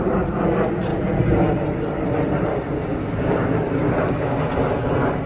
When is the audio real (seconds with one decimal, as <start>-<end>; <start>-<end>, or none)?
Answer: 0.0-2.5; 4.5-5.3